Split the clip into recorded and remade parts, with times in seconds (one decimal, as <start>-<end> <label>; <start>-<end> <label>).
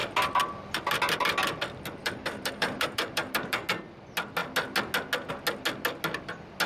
0.0-2.0 recorded; 2.0-3.6 remade; 3.6-6.7 recorded